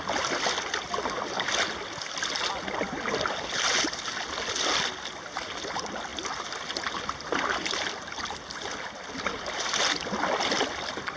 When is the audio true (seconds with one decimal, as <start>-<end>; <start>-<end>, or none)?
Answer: 0.0-6.1; 8.2-11.2